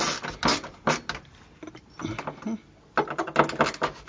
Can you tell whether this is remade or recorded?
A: recorded